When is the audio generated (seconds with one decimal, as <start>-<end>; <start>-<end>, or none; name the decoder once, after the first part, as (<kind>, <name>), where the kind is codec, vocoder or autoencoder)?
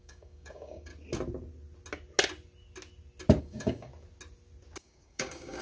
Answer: 0.0-0.9 (codec, DAC); 3.4-3.9; 4.8-5.6